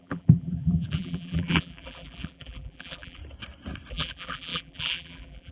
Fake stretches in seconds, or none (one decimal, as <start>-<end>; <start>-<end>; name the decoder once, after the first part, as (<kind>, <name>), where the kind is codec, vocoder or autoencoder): 0.0-3.2 (vocoder, BigVGAN v2); 3.9-5.5